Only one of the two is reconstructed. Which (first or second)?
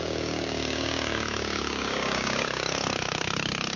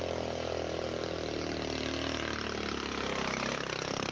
first